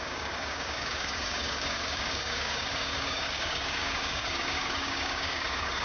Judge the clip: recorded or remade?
remade